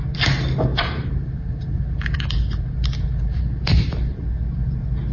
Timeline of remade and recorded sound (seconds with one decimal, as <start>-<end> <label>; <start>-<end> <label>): 0.0-0.7 recorded; 0.7-3.8 remade; 3.8-5.1 recorded